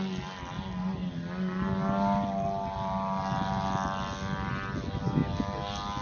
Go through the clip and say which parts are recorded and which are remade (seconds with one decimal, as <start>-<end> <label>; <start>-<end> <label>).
0.0-6.0 recorded